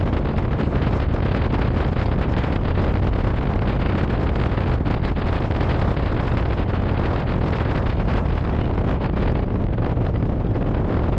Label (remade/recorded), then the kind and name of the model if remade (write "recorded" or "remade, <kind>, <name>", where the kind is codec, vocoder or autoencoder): recorded